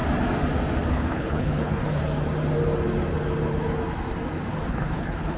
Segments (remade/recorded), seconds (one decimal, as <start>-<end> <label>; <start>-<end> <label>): 0.0-0.9 recorded; 0.9-1.8 remade; 1.8-4.7 recorded; 4.7-5.4 remade